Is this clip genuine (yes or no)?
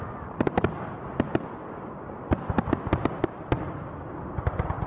yes